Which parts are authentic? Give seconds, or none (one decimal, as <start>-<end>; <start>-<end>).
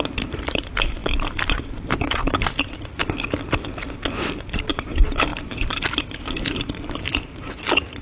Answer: 3.0-4.7